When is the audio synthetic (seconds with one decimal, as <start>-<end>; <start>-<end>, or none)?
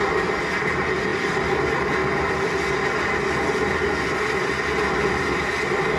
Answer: none